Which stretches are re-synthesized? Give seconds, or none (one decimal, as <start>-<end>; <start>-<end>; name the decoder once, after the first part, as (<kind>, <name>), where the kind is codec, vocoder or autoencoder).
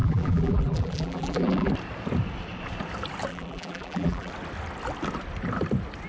0.0-1.7 (vocoder, BigVGAN v2); 3.3-4.3